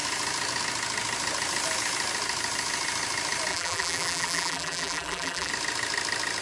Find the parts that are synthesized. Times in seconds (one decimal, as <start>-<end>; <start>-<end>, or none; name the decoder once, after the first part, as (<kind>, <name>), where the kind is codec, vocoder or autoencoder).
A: 3.5-5.5 (vocoder, BigVGAN v2)